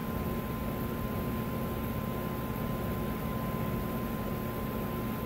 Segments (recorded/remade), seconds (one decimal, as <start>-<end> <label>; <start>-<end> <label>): 0.0-5.3 recorded